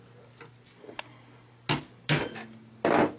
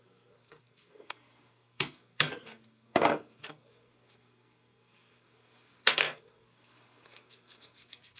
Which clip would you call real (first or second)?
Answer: first